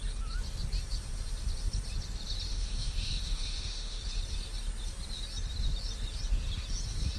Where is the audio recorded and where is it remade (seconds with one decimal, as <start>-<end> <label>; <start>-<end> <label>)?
0.0-2.5 recorded; 2.5-4.0 remade; 4.0-7.2 recorded